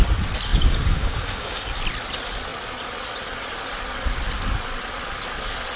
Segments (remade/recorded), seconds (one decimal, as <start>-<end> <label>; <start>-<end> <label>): 0.0-0.5 recorded; 0.5-1.8 remade; 1.8-5.8 recorded